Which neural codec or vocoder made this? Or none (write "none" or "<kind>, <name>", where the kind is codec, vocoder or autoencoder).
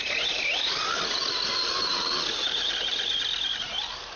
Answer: none